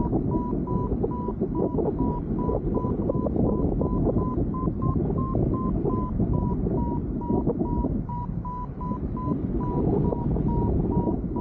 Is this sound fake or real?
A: real